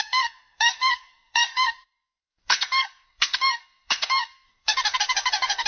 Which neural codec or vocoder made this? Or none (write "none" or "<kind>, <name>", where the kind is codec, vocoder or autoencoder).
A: codec, SNAC